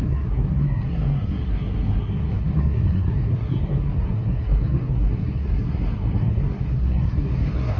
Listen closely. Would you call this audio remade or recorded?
remade